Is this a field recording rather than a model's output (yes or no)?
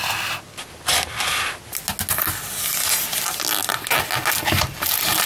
yes